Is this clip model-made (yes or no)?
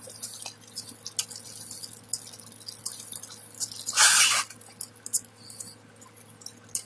no